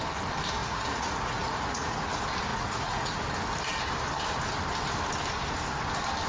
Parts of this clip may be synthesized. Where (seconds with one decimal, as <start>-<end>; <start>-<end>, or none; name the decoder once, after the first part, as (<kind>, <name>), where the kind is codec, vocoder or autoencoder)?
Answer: 0.6-2.1 (vocoder, Vocos); 2.5-3.2